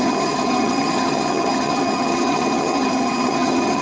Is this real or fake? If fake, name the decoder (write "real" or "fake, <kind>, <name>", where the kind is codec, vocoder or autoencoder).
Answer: fake, vocoder, HiFi-GAN